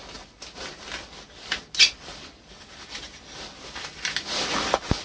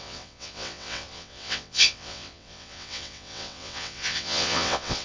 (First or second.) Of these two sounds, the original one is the first